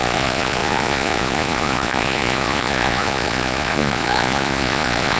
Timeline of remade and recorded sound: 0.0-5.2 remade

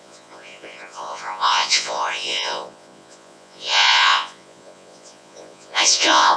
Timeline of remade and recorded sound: 0.0-6.4 remade

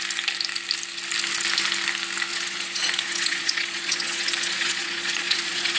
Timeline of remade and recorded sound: 0.0-2.3 recorded; 2.3-5.8 remade

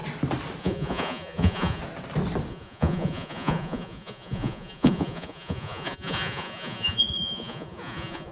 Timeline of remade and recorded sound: 0.0-0.6 recorded; 0.6-1.8 remade; 1.8-2.5 recorded; 2.5-8.3 remade

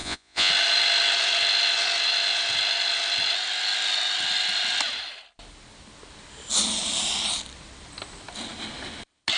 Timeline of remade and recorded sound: 0.0-0.5 remade; 0.5-9.4 recorded

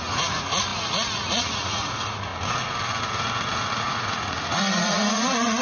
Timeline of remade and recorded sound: 0.0-2.3 remade; 2.3-3.7 recorded; 3.7-5.6 remade